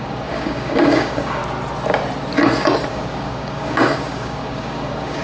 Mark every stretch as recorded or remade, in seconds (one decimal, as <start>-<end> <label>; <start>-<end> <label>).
0.0-1.4 remade; 1.4-2.9 recorded; 2.9-5.2 remade